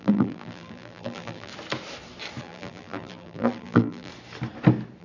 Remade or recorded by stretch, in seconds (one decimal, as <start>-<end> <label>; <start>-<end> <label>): 0.0-1.5 remade; 1.5-2.4 recorded; 2.4-4.1 remade; 4.1-5.0 recorded